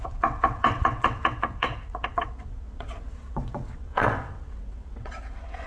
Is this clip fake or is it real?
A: fake